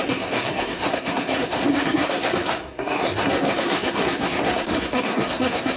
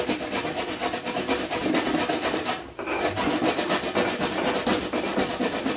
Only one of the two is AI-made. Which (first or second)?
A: first